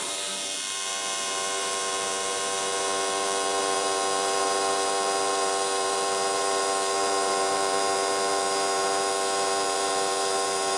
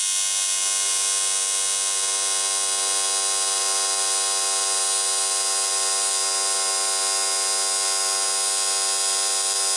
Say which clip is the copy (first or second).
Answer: first